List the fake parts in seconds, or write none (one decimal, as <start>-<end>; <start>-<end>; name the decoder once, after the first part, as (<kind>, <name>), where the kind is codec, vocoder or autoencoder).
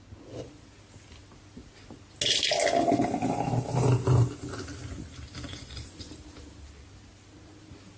5.5-6.1 (vocoder, Vocos)